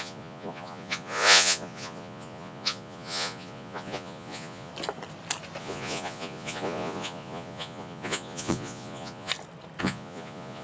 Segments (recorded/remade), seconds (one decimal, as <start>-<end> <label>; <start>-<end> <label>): 0.0-4.7 remade; 4.7-5.6 recorded; 5.6-9.3 remade; 9.3-9.8 recorded; 9.8-10.6 remade